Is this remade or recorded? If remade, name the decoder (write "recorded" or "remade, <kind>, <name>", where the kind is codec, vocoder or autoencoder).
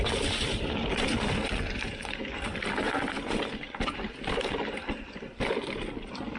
remade, vocoder, BigVGAN v2